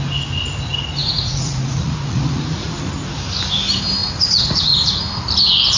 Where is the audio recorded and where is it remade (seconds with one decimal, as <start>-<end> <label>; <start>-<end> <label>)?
0.0-1.0 recorded; 1.0-2.9 remade; 2.9-4.0 recorded; 4.0-5.0 remade; 5.0-5.8 recorded